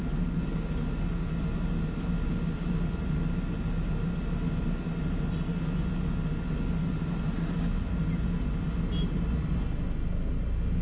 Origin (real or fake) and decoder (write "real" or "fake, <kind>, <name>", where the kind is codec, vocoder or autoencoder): real